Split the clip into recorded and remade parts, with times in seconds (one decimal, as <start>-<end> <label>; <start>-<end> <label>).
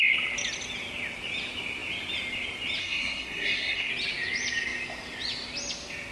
0.0-2.8 recorded; 2.8-3.9 remade; 3.9-6.1 recorded